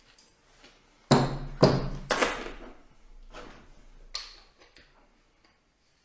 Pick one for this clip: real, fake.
real